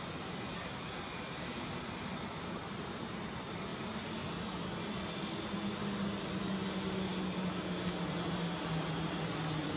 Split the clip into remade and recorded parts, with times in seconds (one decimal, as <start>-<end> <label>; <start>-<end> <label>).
0.0-9.8 recorded